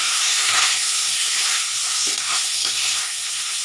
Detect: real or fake fake